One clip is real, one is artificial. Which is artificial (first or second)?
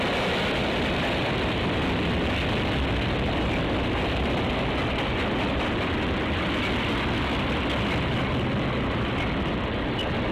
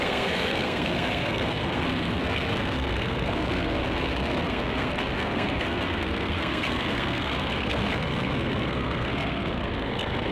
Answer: second